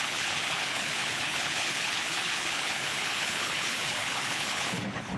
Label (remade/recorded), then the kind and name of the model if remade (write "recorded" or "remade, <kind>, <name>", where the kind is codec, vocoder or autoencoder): remade, codec, HILCodec